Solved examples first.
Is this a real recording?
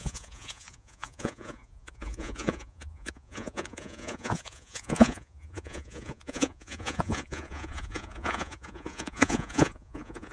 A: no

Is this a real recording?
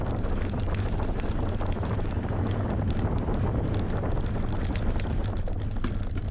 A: yes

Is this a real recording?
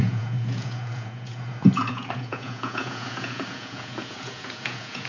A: no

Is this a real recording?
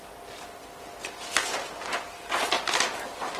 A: yes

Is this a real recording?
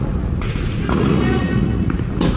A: no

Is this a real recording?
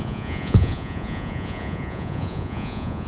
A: no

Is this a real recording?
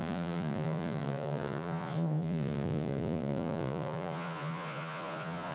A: no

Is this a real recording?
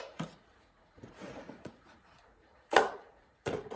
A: no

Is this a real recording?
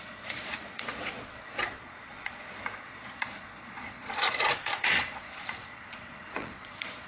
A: no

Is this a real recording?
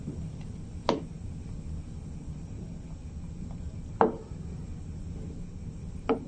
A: yes